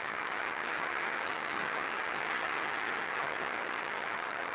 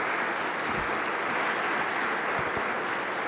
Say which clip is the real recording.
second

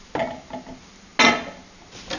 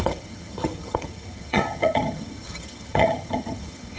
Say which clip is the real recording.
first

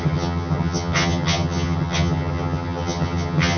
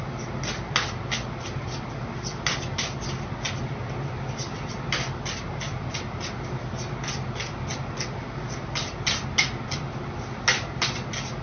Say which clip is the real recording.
second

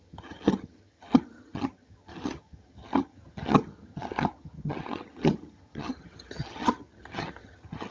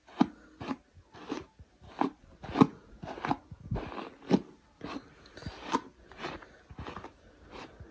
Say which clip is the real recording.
second